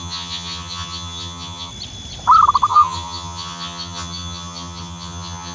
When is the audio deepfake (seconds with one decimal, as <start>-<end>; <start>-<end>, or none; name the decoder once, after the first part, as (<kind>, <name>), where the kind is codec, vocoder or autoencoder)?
0.0-1.7 (vocoder, HiFi-GAN); 2.7-5.5